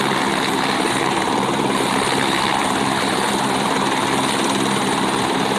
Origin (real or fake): fake